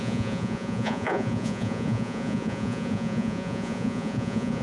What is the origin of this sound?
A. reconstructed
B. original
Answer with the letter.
A